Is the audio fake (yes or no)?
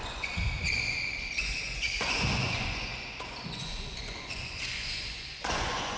yes